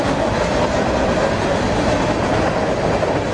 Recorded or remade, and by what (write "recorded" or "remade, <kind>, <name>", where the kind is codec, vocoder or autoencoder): recorded